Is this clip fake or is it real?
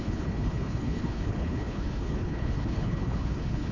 fake